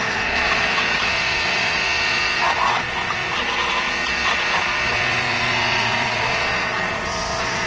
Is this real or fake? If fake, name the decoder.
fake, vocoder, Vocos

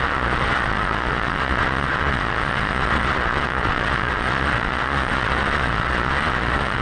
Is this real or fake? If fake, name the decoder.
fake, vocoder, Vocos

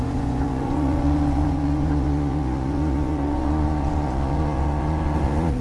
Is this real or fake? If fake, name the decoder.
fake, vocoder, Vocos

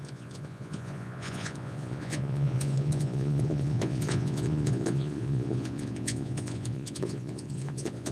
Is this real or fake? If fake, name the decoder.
fake, vocoder, Vocos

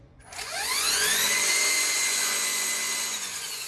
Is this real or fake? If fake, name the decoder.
fake, vocoder, Vocos